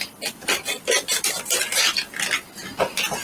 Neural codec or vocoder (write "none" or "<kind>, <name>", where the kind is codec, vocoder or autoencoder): none